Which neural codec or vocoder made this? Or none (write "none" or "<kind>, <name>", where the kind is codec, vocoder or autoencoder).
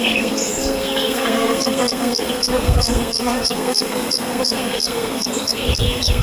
codec, SNAC